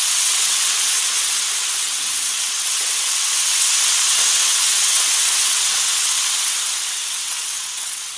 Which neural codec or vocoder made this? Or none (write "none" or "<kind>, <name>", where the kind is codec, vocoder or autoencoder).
vocoder, WaveNeXt